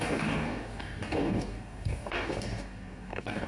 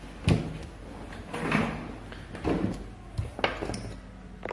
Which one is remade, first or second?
first